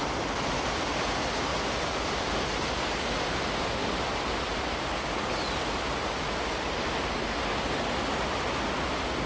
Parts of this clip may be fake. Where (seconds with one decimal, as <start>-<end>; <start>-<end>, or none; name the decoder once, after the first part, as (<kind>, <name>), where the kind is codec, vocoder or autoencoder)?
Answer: 1.5-2.3 (vocoder, BigVGAN v2)